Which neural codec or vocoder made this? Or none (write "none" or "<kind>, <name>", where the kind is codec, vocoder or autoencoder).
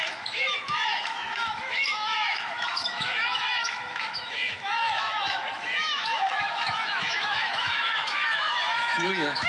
autoencoder, DAC-VAE